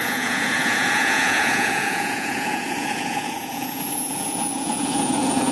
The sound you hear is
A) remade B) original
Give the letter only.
A